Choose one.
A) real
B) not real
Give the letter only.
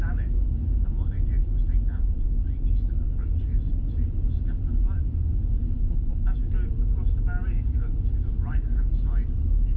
B